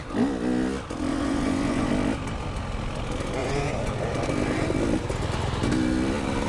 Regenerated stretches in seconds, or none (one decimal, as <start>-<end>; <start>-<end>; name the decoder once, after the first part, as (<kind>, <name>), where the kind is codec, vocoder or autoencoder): 1.1-1.9 (vocoder, Vocos); 3.4-3.9